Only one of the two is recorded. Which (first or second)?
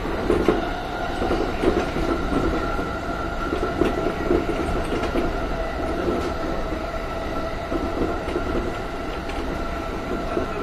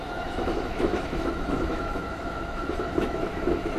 first